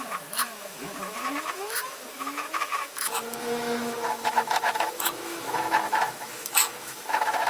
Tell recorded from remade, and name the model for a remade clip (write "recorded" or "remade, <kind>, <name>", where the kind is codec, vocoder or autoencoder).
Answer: remade, autoencoder, DAC-VAE